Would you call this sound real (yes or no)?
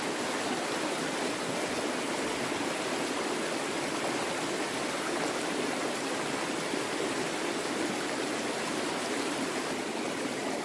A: yes